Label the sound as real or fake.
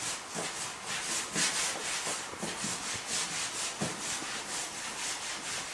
real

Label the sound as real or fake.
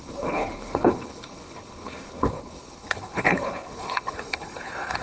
fake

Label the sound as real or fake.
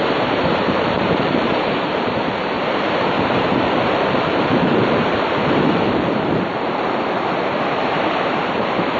fake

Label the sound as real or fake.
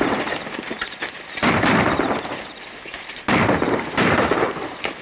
fake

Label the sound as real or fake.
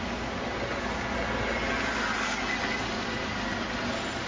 real